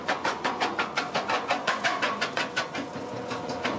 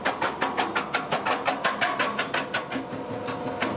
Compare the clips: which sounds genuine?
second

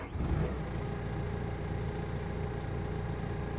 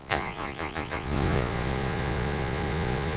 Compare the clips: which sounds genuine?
first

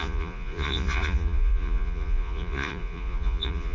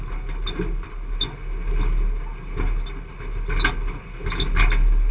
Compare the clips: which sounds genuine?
second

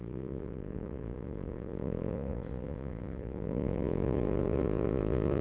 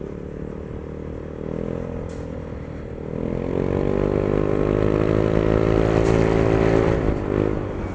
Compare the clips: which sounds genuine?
second